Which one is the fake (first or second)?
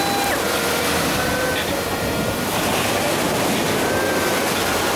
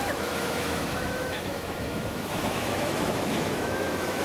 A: second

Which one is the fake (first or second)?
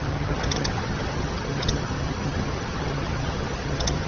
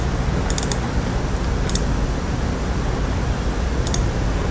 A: first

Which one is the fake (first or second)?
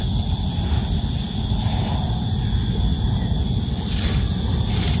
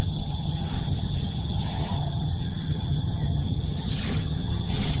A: second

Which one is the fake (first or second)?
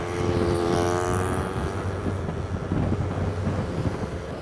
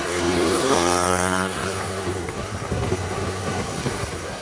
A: second